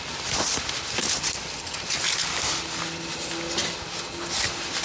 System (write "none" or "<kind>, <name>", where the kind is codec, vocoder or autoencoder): none